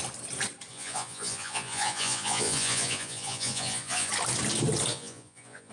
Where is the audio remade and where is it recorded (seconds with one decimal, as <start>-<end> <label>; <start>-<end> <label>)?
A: 0.0-0.7 recorded; 0.7-4.1 remade; 4.1-4.9 recorded; 4.9-5.7 remade